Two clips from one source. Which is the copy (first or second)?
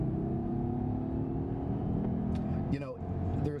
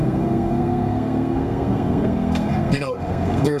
second